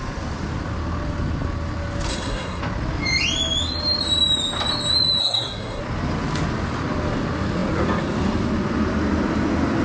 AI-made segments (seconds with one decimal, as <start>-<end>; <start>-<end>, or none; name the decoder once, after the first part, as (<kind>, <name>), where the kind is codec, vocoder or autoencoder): 2.1-2.6 (codec, SNAC); 5.2-5.8